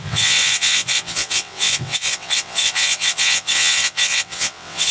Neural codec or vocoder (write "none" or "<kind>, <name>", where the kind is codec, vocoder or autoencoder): vocoder, WaveNeXt